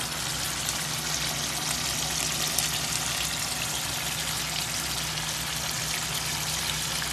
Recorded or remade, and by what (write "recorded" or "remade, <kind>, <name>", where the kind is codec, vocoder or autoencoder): recorded